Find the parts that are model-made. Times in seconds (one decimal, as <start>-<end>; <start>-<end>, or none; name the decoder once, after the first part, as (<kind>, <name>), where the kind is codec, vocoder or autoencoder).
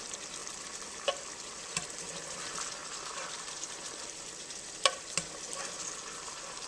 0.4-1.6 (vocoder, BigVGAN v2); 2.8-5.8